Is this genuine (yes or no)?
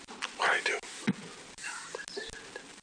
yes